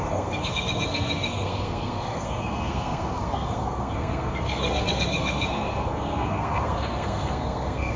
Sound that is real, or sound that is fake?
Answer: fake